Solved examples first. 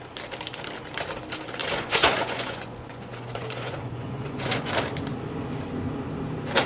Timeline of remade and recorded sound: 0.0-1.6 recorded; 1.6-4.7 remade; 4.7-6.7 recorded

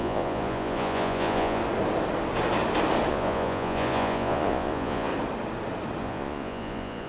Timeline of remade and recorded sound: 0.0-1.6 remade; 1.6-3.1 recorded; 3.1-5.1 remade; 5.1-6.0 recorded; 6.0-7.1 remade

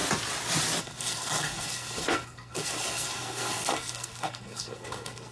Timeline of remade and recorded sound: 0.0-0.8 recorded; 0.8-5.3 remade

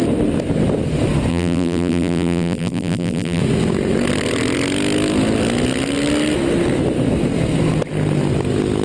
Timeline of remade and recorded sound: 0.0-1.3 recorded; 1.3-3.4 remade; 3.4-8.8 recorded

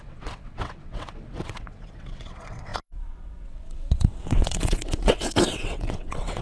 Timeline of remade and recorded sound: 0.0-6.4 remade

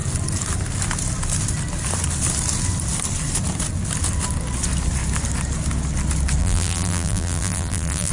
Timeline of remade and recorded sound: 0.0-6.4 recorded; 6.4-8.1 remade

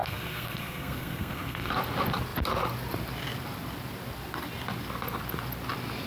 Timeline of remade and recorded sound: 0.0-1.7 remade; 1.7-6.1 recorded